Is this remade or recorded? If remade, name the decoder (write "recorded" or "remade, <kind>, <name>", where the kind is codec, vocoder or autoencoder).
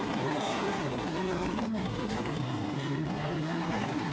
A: remade, codec, SNAC